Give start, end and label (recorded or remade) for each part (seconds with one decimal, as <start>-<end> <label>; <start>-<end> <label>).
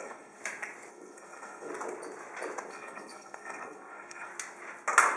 0.0-0.4 remade; 0.4-0.9 recorded; 0.9-1.7 remade; 1.7-2.7 recorded; 2.7-4.3 remade; 4.3-5.2 recorded